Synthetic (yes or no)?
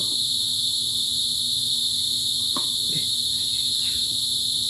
no